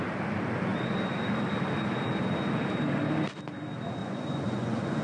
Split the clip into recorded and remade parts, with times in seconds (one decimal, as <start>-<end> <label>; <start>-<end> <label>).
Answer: 0.0-4.0 recorded; 4.0-5.0 remade